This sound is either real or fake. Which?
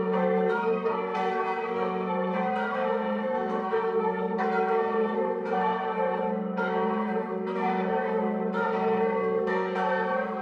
fake